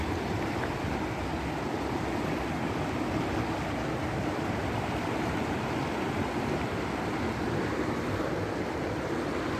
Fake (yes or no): no